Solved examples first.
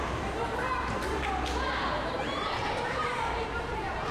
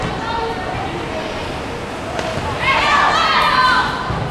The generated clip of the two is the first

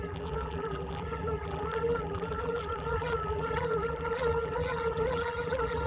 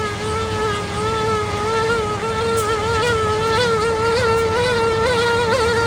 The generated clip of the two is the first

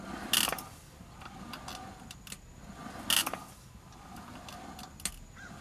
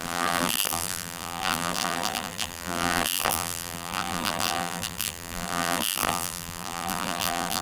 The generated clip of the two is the second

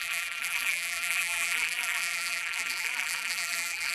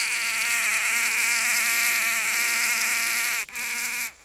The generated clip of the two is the first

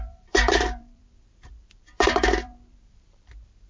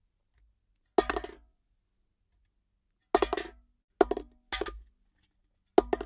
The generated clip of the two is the first